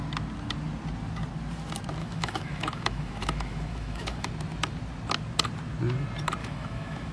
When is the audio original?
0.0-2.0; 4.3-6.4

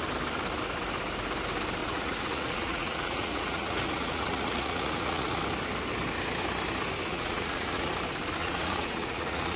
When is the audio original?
0.0-1.8; 5.4-7.1; 7.9-8.4

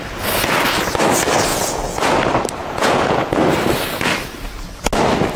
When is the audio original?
0.0-1.5; 2.2-2.6; 3.4-5.4

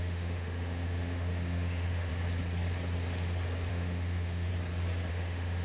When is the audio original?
2.1-3.7; 4.5-5.1

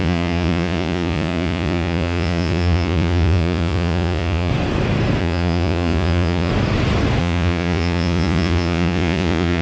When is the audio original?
4.5-5.2; 6.5-7.2

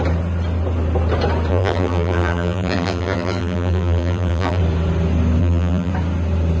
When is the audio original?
0.0-1.5; 4.6-5.4; 5.9-6.6